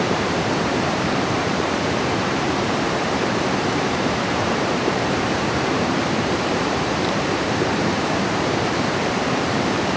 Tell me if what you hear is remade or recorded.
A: remade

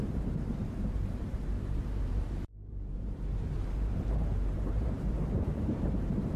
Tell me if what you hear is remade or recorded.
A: remade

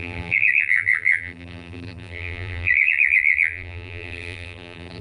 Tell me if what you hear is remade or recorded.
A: remade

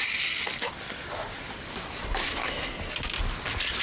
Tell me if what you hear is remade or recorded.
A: recorded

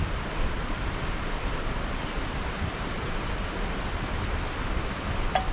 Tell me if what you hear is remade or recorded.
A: recorded